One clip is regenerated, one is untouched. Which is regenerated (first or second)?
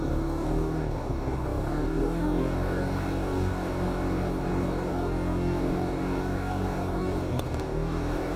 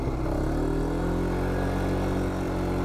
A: first